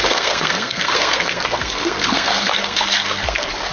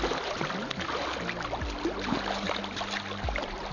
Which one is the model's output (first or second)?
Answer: first